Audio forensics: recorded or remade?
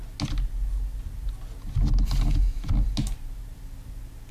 recorded